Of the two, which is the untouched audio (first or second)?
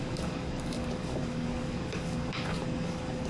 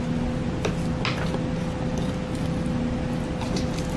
second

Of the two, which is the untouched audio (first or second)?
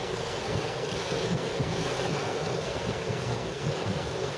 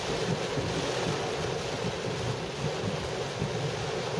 second